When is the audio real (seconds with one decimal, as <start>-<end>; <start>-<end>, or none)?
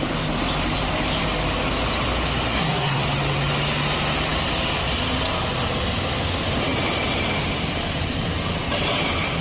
0.0-2.5; 3.0-9.4